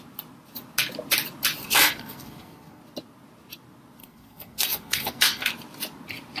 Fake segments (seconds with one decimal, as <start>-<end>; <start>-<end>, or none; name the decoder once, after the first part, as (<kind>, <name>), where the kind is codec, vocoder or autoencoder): 1.6-2.8 (codec, SNAC); 4.0-5.5